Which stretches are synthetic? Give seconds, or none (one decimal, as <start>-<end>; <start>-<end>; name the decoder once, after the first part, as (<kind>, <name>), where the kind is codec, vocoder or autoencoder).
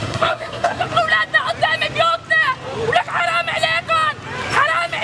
0.0-0.8 (codec, SNAC)